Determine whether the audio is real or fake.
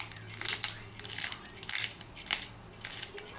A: real